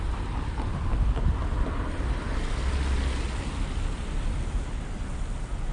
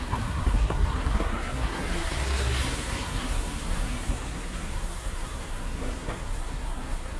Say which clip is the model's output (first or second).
second